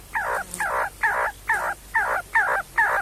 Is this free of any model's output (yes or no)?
yes